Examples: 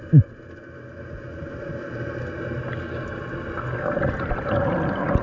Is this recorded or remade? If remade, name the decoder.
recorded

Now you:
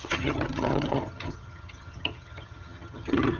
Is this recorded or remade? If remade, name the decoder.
remade, vocoder, HiFi-GAN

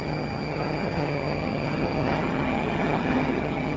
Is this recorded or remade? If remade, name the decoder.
remade, vocoder, HiFi-GAN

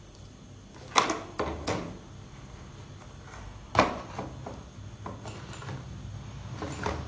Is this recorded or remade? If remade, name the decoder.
recorded